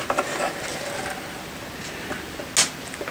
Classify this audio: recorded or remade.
recorded